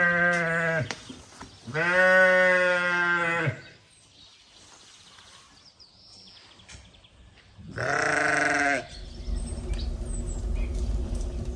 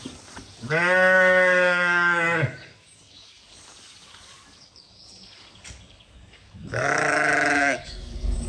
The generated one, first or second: second